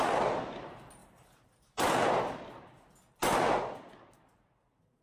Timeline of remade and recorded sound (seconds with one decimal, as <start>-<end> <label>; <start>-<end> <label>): 0.0-1.0 recorded; 1.0-2.1 remade; 2.1-5.0 recorded